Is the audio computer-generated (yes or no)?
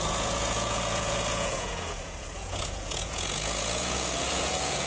yes